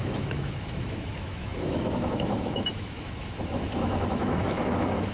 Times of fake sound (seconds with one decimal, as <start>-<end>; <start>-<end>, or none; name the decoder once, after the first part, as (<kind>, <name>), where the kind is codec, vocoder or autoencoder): 0.0-5.1 (autoencoder, DAC-VAE)